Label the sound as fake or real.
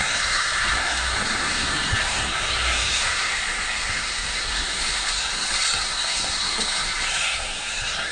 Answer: fake